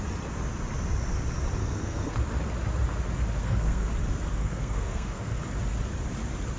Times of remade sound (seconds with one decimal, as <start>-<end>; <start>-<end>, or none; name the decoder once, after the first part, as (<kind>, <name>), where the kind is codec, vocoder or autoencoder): 1.6-2.1 (codec, SNAC); 3.4-3.9; 4.3-5.4